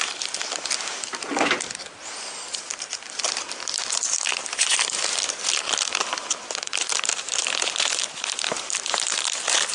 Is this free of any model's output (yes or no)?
no